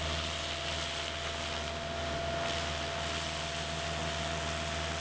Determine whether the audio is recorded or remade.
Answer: recorded